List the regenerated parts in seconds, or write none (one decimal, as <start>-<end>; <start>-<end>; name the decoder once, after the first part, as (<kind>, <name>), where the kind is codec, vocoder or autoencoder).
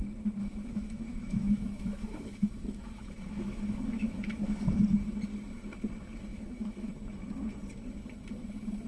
0.4-4.8 (autoencoder, DAC-VAE); 6.3-6.9